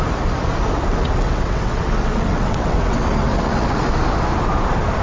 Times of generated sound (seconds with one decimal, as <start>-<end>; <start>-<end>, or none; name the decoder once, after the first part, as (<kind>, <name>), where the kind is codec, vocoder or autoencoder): 0.9-3.9 (vocoder, WaveNeXt)